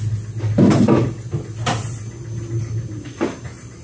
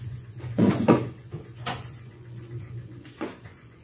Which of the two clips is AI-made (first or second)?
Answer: second